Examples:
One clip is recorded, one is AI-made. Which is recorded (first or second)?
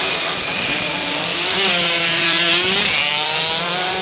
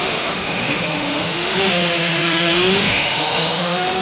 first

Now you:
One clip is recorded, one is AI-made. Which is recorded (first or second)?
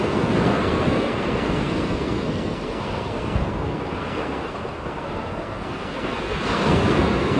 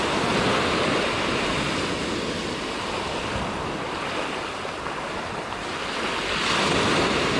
second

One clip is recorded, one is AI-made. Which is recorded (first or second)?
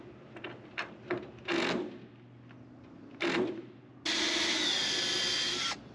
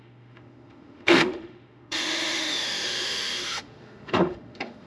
first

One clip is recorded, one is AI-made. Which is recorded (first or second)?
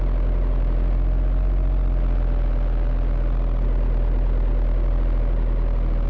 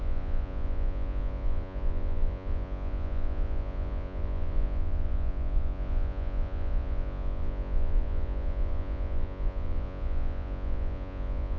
first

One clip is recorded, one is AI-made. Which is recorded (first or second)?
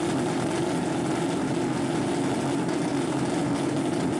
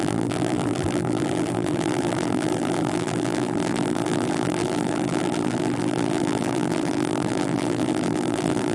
first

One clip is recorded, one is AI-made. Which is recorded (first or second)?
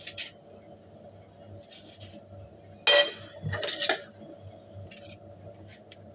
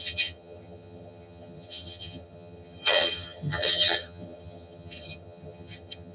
first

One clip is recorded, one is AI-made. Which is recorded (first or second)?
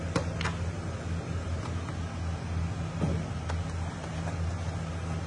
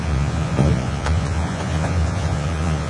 first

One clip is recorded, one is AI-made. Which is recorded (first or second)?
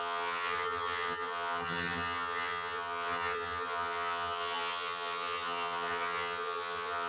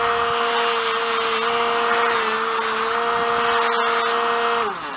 second